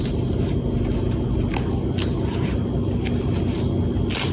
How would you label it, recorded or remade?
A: recorded